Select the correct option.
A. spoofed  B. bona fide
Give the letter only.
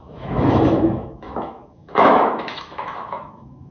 A